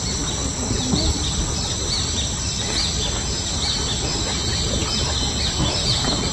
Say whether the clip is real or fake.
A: real